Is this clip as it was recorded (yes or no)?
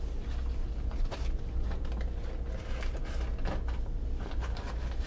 yes